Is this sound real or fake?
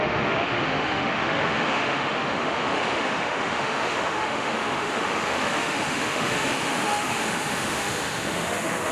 fake